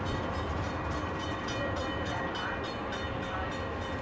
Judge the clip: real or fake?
real